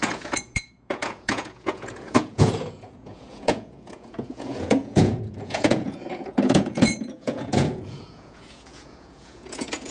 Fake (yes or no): yes